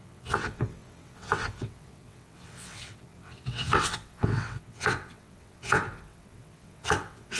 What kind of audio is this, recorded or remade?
remade